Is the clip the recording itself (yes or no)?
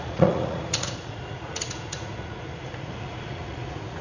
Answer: no